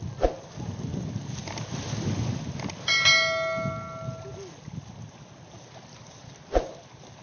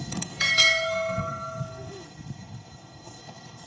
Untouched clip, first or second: first